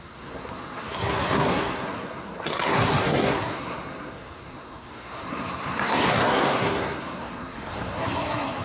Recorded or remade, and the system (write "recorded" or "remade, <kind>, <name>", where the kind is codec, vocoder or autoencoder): remade, codec, SNAC